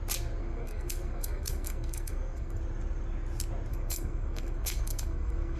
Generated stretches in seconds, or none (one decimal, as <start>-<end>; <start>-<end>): 0.4-2.6; 3.7-5.6